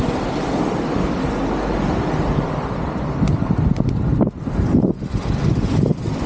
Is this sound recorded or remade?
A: recorded